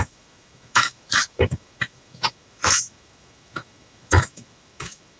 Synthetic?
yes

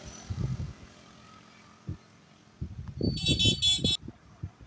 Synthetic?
no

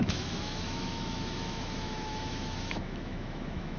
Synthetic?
yes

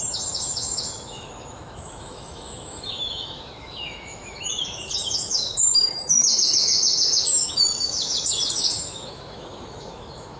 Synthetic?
yes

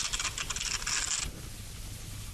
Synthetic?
no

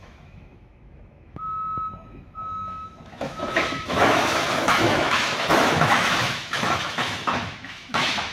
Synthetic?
yes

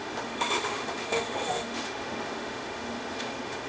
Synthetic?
yes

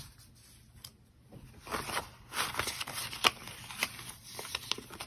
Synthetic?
no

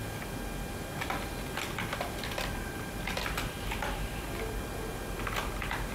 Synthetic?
no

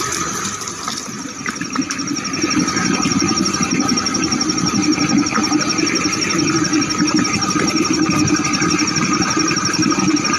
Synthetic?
no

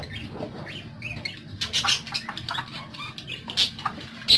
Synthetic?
no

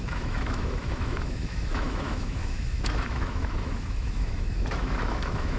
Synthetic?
yes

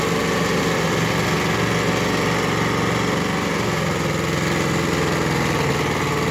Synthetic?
no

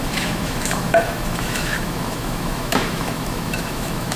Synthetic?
yes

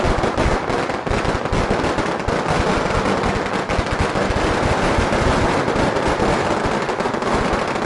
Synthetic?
no